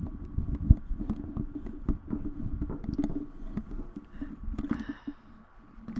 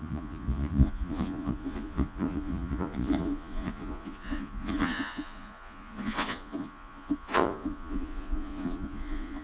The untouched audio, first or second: first